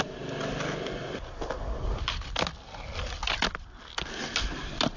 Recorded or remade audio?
recorded